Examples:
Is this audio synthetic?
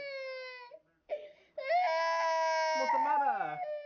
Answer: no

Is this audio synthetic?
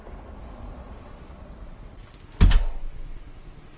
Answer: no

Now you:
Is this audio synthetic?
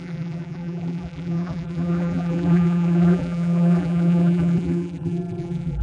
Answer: yes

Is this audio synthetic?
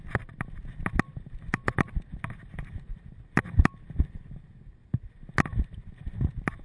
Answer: no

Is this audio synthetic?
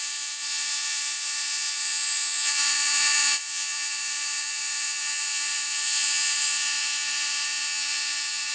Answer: yes